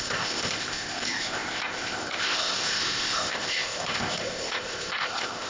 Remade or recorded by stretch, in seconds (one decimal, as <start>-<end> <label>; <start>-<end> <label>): 0.0-5.5 remade